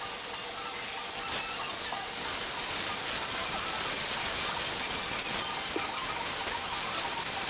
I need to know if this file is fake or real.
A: real